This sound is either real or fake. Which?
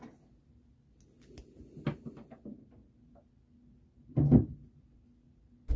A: real